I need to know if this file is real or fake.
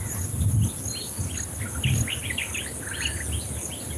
real